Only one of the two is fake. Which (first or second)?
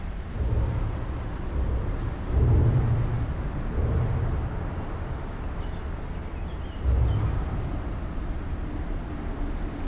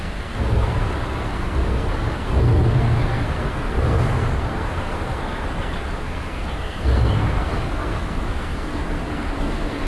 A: second